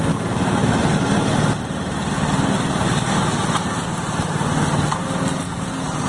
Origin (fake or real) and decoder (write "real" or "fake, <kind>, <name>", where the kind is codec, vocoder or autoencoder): real